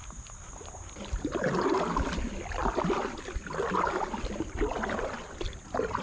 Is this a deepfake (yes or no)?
no